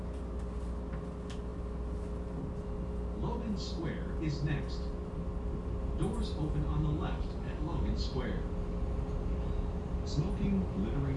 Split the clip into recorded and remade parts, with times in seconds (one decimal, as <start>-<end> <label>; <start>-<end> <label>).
0.0-6.7 recorded; 6.7-7.9 remade; 7.9-11.2 recorded